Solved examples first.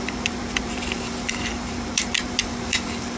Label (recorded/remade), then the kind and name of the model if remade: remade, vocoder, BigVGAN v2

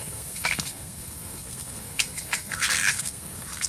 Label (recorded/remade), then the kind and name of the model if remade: remade, codec, SNAC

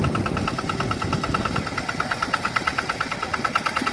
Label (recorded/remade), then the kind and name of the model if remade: recorded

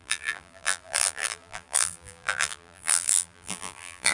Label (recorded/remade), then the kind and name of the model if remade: remade, vocoder, BigVGAN v2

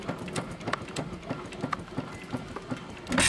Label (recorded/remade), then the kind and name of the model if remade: recorded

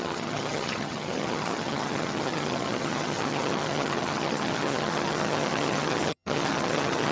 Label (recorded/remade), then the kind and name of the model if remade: remade, vocoder, HiFi-GAN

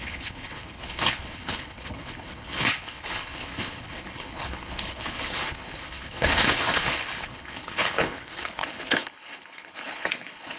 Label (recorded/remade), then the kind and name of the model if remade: remade, codec, HILCodec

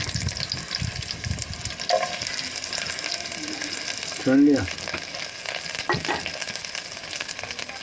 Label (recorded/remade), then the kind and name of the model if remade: recorded